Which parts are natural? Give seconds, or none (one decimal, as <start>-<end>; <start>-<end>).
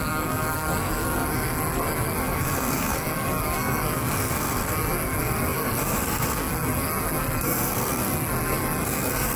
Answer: none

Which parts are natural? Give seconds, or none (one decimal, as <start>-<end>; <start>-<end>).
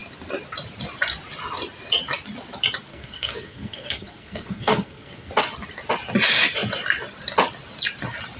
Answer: 0.0-2.9; 5.3-8.4